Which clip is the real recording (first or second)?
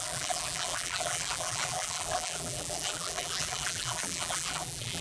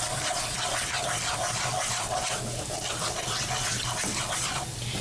second